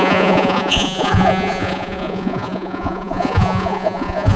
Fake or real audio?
fake